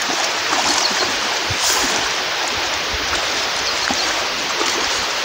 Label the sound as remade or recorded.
remade